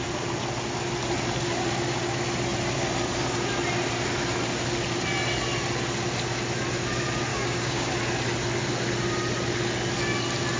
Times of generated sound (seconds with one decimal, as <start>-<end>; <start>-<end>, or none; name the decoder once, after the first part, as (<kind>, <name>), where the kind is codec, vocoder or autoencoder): 7.3-7.9 (codec, DAC)

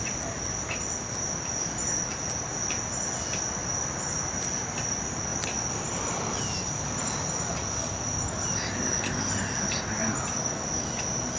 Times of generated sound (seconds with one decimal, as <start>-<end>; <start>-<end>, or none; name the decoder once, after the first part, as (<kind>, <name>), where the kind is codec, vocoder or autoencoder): none

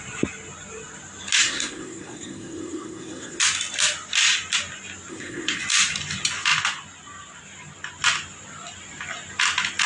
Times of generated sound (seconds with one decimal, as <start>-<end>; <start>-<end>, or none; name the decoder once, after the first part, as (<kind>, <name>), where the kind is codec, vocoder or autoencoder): 1.4-3.4 (codec, SNAC); 5.1-5.6

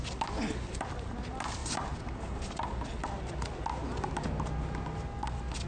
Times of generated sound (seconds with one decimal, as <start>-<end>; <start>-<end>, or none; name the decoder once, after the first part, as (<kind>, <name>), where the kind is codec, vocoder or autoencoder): none

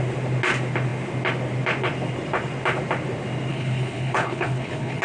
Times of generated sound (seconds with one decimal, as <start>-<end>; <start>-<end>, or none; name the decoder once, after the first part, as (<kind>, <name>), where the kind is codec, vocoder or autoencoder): 3.5-5.0 (codec, HILCodec)

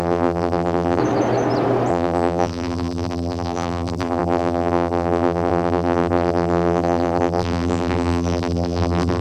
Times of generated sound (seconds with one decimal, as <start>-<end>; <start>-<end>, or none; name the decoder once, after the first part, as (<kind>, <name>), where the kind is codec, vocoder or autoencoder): 0.0-1.0 (vocoder, BigVGAN v2); 1.9-9.2

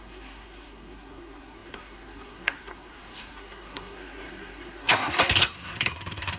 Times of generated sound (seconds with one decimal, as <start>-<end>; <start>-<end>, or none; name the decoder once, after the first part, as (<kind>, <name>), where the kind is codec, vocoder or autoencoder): 0.0-6.4 (codec, SNAC)

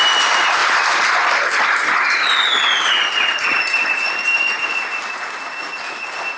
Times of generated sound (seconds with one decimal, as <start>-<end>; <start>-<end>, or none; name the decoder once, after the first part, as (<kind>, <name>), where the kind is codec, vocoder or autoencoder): none